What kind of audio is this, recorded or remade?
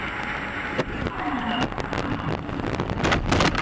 recorded